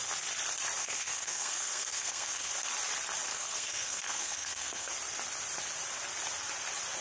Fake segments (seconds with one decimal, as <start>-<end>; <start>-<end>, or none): 0.8-2.5; 3.3-4.9